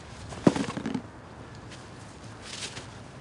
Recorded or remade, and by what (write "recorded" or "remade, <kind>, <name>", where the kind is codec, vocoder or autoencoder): recorded